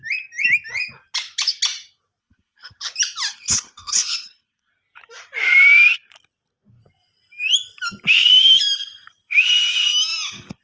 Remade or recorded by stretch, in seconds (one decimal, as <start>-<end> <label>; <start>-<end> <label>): 0.0-2.2 recorded; 2.2-2.9 remade; 2.9-3.3 recorded; 3.3-4.7 remade; 4.7-10.6 recorded